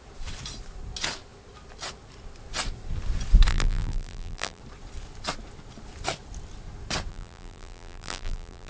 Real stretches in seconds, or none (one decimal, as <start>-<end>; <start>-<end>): 0.0-3.5; 4.6-7.1